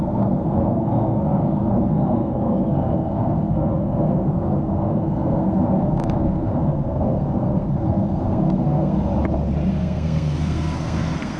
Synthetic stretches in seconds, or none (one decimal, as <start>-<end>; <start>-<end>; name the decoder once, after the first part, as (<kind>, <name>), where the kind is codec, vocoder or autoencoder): 0.0-9.1 (codec, SNAC); 9.7-11.4